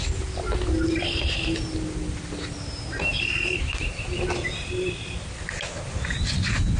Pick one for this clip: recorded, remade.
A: recorded